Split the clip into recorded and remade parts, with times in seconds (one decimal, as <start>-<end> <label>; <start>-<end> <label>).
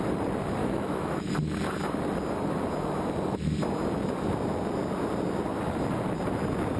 0.0-0.6 recorded; 0.6-1.3 remade; 1.3-6.8 recorded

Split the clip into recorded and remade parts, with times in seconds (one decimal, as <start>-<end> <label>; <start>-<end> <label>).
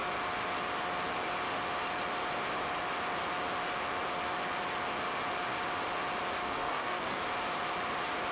0.0-6.4 recorded; 6.4-7.2 remade; 7.2-8.3 recorded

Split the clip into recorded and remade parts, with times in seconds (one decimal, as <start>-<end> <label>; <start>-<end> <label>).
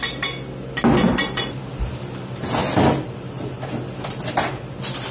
0.0-5.1 recorded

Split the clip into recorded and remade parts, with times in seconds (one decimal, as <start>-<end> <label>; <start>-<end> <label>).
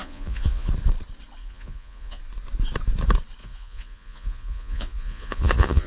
0.0-0.7 remade; 0.7-1.4 recorded; 1.4-2.2 remade; 2.2-3.4 recorded; 3.4-5.9 remade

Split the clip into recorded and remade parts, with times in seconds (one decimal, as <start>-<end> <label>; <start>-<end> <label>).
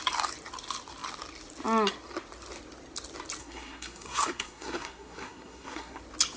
0.0-3.4 recorded; 3.4-6.0 remade; 6.0-6.4 recorded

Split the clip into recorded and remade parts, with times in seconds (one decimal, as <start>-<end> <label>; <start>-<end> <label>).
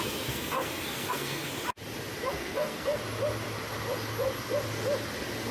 0.0-1.5 remade; 1.5-2.2 recorded; 2.2-3.0 remade; 3.0-5.5 recorded